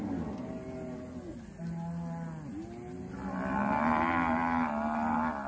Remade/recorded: recorded